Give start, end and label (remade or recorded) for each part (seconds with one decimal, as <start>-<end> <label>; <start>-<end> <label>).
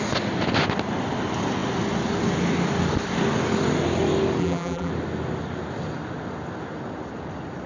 0.0-4.4 recorded; 4.4-4.9 remade; 4.9-7.7 recorded